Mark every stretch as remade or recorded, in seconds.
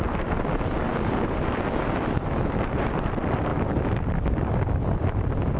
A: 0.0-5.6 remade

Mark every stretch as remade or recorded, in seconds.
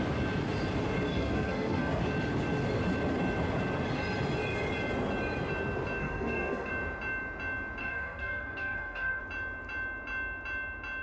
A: 0.0-1.1 recorded; 1.1-2.0 remade; 2.0-6.0 recorded; 6.0-6.7 remade; 6.7-7.8 recorded; 7.8-9.2 remade; 9.2-11.0 recorded